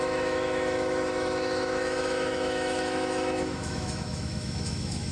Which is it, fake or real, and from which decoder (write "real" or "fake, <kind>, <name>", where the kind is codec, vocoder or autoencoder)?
fake, autoencoder, DAC-VAE